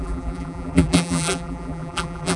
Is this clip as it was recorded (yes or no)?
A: no